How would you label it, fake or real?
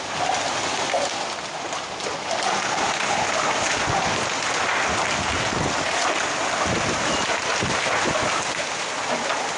real